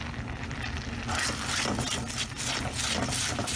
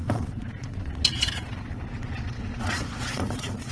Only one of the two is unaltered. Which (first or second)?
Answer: first